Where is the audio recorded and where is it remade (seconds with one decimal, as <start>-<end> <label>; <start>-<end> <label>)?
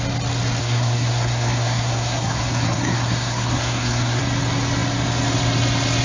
0.0-0.6 recorded; 0.6-4.2 remade; 4.2-6.0 recorded